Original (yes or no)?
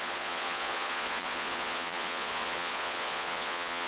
no